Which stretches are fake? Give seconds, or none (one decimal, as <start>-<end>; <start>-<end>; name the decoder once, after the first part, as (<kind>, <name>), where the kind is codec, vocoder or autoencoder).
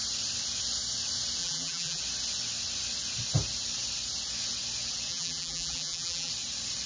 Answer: 1.4-2.0 (vocoder, BigVGAN v2); 5.1-6.3